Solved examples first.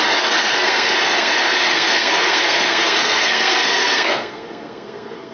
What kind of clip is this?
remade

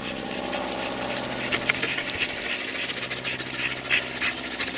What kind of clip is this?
recorded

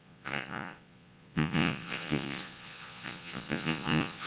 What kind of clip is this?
remade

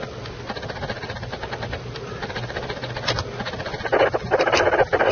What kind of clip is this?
recorded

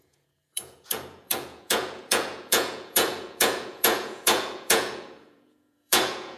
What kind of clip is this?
remade